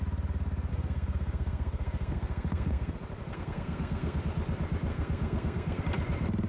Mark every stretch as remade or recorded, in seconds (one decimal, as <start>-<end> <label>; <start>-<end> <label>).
0.0-0.7 recorded; 0.7-2.9 remade; 2.9-3.3 recorded; 3.3-4.2 remade; 4.2-4.9 recorded; 4.9-5.8 remade; 5.8-6.5 recorded